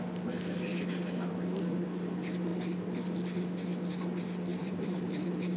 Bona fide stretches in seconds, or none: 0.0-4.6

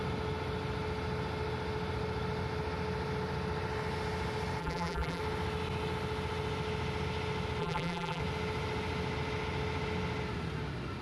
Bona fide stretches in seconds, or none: 0.0-4.6; 5.2-7.6; 8.2-11.0

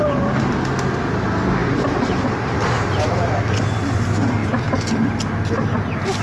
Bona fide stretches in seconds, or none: 0.0-1.6; 3.3-6.2

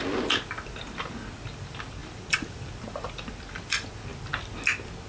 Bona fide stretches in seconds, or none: 0.0-2.0; 3.3-5.1